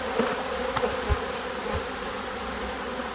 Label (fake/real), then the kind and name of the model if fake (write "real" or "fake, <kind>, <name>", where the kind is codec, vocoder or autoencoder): real